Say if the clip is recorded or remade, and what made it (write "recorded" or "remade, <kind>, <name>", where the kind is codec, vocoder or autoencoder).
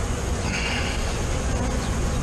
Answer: remade, vocoder, Vocos